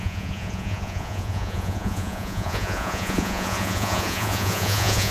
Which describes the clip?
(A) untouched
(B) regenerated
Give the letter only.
B